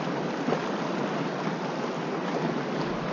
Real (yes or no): yes